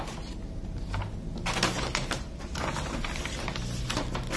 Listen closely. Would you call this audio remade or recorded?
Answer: recorded